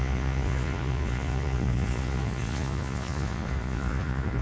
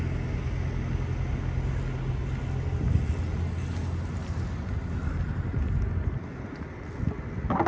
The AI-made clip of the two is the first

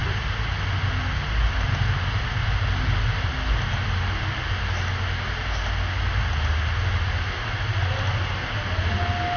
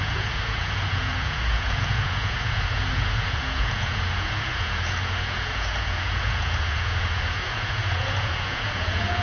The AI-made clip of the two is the second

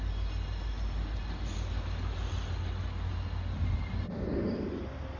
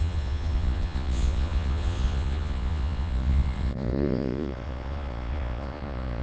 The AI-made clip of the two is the second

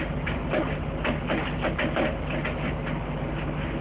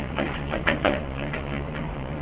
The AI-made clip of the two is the second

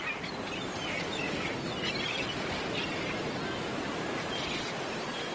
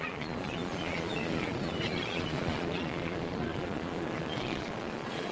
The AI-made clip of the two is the second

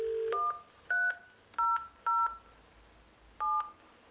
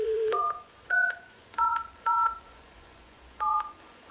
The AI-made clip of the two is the second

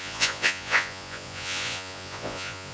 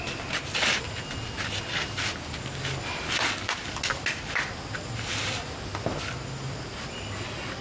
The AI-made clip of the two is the first